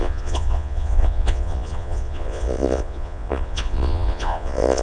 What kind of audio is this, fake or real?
fake